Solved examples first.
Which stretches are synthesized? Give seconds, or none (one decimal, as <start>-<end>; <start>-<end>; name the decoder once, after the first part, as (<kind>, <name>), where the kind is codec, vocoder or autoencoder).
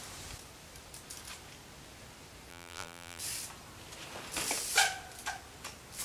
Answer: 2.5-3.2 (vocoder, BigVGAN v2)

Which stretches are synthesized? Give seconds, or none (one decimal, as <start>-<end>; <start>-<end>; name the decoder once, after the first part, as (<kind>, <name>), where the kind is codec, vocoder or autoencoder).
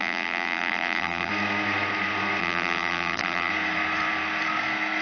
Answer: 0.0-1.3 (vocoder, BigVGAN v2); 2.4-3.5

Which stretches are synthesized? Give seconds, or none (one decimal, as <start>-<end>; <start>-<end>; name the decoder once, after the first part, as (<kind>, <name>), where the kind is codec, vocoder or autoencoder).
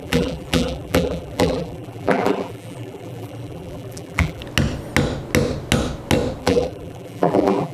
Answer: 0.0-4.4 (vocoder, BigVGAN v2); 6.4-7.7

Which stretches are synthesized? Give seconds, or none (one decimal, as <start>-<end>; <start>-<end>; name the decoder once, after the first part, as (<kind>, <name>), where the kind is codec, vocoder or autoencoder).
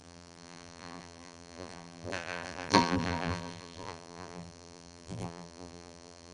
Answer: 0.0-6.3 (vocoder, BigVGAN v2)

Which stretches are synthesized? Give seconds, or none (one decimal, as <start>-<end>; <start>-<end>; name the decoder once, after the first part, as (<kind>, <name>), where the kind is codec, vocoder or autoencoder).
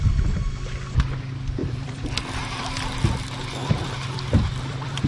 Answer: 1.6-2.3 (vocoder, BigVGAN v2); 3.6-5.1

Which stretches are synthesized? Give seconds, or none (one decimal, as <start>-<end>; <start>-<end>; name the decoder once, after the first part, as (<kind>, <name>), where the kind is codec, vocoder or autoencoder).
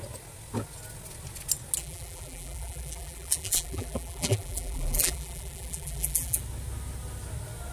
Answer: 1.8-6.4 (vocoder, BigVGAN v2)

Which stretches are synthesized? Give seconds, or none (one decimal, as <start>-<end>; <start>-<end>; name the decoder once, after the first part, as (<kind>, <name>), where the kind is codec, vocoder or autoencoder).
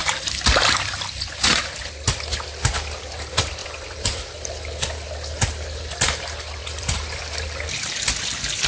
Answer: 0.0-1.6 (vocoder, BigVGAN v2); 3.6-4.2; 6.6-7.2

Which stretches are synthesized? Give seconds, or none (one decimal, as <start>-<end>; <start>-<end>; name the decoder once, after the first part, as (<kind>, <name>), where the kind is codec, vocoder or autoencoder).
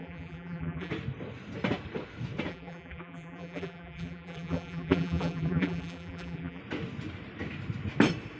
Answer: 0.0-0.9 (vocoder, BigVGAN v2); 2.5-6.6